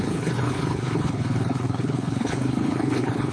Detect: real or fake fake